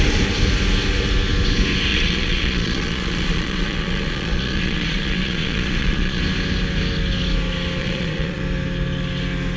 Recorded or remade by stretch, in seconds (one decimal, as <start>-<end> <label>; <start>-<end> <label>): 0.0-1.9 recorded; 1.9-6.2 remade; 6.2-7.8 recorded; 7.8-8.4 remade; 8.4-9.6 recorded